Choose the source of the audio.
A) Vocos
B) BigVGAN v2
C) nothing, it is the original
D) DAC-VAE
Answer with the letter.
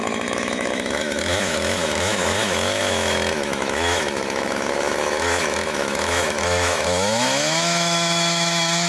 D